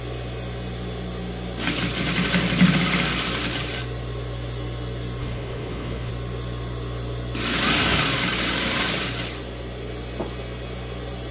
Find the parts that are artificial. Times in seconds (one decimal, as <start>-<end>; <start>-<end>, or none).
5.2-6.1